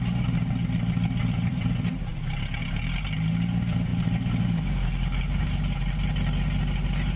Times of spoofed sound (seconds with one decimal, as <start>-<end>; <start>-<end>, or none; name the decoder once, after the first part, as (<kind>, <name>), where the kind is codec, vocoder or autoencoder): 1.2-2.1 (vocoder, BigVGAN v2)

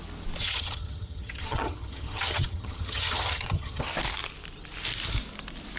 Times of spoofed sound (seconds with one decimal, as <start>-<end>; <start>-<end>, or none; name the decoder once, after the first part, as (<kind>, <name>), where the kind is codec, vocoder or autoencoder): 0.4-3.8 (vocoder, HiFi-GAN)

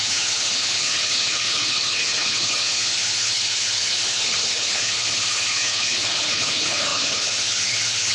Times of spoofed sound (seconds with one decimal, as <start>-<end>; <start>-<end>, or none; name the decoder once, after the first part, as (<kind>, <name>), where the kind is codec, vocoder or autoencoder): 0.0-8.1 (codec, HILCodec)

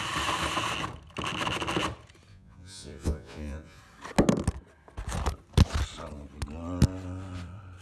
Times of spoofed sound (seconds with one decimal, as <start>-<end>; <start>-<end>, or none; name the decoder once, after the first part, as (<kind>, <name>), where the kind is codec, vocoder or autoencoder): 2.3-3.8 (vocoder, Vocos)